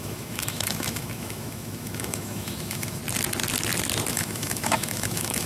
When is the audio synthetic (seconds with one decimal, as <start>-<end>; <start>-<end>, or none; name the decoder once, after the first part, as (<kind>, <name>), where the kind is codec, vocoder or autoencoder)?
0.0-3.0 (autoencoder, DAC-VAE); 4.1-5.5